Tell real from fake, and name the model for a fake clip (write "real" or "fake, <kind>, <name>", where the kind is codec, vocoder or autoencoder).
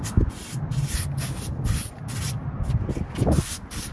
real